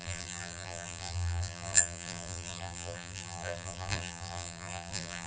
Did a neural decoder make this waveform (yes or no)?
yes